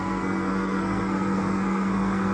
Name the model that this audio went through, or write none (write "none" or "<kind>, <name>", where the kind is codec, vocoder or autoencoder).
codec, SNAC